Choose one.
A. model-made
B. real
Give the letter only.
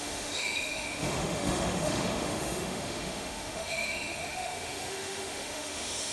A